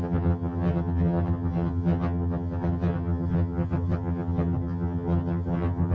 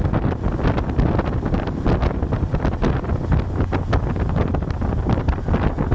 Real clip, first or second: second